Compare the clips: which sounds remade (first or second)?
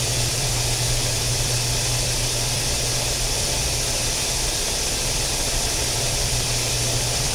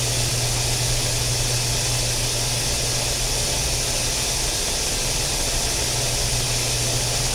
first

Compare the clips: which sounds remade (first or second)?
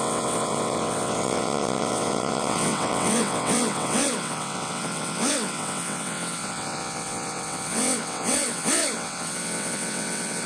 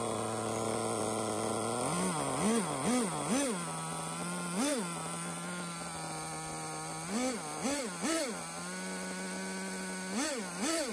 first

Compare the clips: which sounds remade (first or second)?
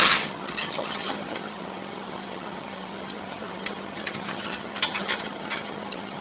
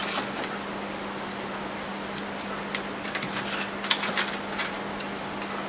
first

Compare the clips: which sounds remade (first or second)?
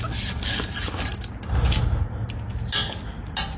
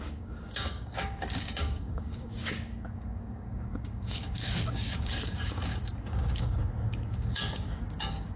second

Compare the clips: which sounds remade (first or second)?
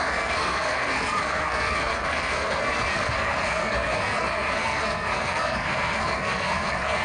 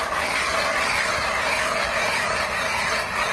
first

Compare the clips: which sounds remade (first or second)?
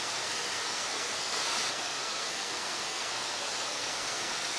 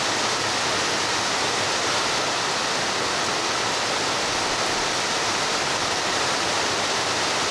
first